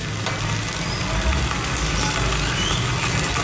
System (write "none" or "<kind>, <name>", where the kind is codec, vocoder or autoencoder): none